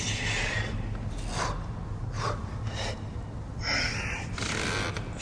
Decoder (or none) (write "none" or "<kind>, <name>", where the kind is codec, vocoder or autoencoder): none